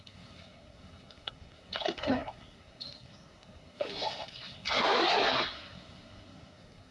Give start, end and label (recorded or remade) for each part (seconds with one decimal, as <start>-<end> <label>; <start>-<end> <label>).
0.0-6.9 remade